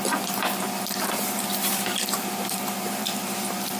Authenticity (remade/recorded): remade